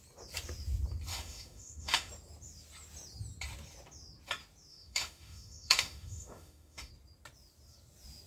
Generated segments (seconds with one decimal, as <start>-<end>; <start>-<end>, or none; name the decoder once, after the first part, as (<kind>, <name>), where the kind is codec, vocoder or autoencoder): 1.1-2.1 (autoencoder, DAC-VAE); 4.7-6.9